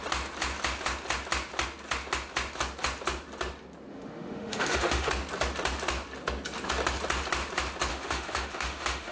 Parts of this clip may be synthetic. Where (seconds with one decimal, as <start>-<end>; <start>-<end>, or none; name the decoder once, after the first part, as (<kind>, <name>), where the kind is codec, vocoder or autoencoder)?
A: 3.9-5.1 (autoencoder, DAC-VAE); 7.9-9.1